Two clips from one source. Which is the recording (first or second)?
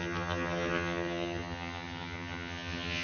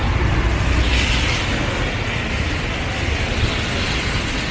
second